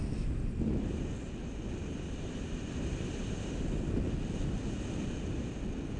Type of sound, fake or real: real